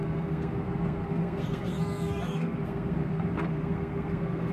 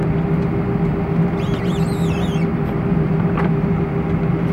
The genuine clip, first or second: second